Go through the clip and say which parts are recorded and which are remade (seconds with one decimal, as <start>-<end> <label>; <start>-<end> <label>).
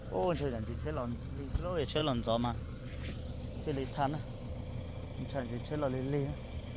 0.0-0.6 recorded; 0.6-1.2 remade; 1.2-6.8 recorded